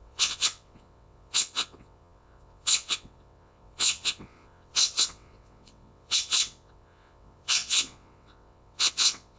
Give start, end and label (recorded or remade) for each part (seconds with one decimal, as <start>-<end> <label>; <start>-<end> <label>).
0.0-9.4 remade